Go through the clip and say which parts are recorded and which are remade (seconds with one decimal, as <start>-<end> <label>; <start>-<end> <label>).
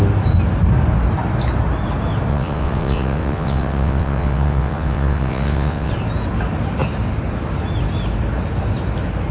0.0-2.3 recorded; 2.3-5.9 remade; 5.9-9.3 recorded